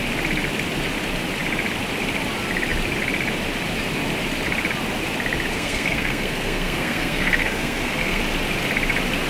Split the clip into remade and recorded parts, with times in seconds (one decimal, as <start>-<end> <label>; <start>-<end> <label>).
0.0-5.5 recorded; 5.5-8.2 remade; 8.2-9.3 recorded